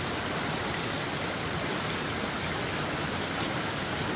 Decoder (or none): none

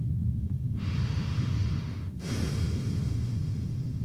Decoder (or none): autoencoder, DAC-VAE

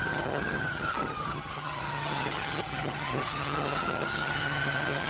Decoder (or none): vocoder, HiFi-GAN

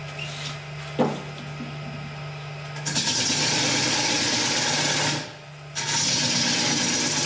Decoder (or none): none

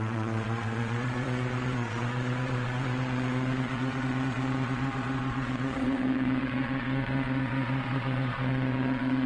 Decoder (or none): vocoder, Vocos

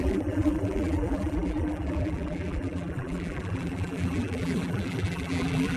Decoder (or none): vocoder, BigVGAN v2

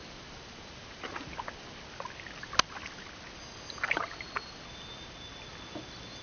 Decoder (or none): none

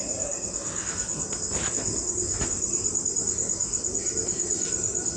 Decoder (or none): none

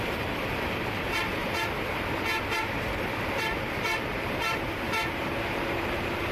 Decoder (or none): vocoder, BigVGAN v2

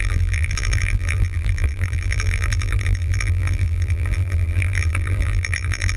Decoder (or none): vocoder, BigVGAN v2